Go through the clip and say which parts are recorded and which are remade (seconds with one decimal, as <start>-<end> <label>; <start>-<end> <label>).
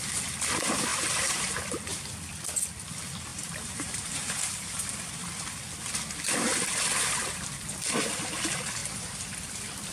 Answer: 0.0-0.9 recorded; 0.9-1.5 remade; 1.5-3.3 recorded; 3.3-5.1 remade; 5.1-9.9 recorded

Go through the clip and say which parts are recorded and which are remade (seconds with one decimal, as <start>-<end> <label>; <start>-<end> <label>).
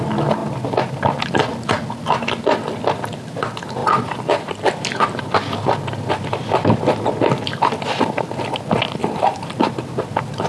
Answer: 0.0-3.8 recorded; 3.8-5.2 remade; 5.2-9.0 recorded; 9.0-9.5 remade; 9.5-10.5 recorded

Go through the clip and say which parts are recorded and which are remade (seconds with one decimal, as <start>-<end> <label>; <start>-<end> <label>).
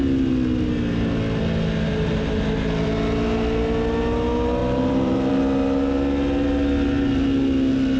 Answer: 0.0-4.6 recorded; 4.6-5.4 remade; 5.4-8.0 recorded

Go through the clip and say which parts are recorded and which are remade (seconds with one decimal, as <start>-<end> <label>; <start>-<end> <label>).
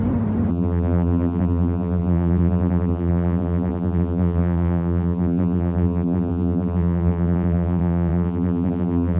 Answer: 0.0-0.5 recorded; 0.5-9.2 remade